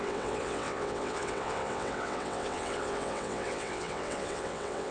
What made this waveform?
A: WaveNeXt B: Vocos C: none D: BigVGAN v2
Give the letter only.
A